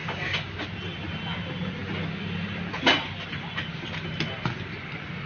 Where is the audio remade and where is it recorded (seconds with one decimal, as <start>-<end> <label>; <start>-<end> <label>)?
0.0-0.6 remade; 0.6-5.3 recorded

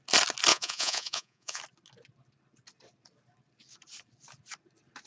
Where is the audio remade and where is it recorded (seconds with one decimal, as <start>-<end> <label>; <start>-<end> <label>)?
0.0-0.5 recorded; 0.5-1.6 remade; 1.6-5.1 recorded

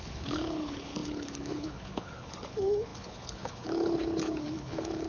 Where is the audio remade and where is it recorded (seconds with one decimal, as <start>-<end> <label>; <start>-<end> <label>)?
0.0-5.1 remade